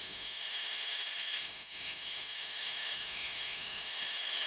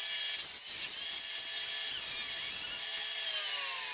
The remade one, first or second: first